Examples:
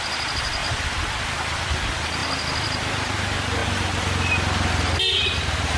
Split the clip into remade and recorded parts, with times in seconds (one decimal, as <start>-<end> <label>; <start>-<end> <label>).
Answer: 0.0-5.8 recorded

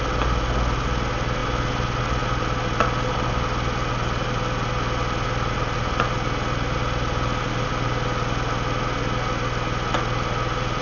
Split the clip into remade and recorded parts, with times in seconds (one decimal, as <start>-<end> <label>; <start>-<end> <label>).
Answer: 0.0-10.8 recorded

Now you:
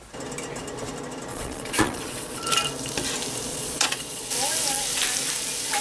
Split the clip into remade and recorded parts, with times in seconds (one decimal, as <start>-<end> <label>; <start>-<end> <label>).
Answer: 0.0-1.3 recorded; 1.3-2.4 remade; 2.4-3.5 recorded; 3.5-4.2 remade; 4.2-5.8 recorded

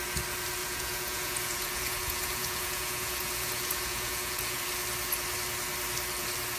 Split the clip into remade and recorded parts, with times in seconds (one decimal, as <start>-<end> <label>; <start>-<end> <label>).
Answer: 0.0-0.6 recorded; 0.6-4.6 remade; 4.6-6.6 recorded